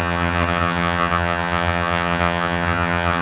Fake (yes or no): yes